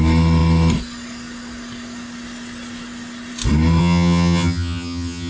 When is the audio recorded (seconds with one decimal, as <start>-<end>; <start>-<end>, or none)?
0.0-3.8